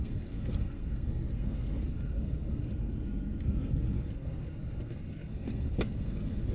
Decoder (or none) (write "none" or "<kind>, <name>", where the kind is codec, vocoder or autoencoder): codec, SNAC